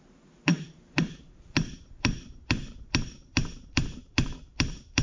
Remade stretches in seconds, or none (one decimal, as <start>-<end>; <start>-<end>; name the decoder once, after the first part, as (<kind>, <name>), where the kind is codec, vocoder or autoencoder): 0.0-5.0 (vocoder, BigVGAN v2)